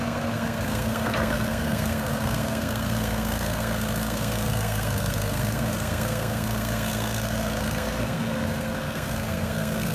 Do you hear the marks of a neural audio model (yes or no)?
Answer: yes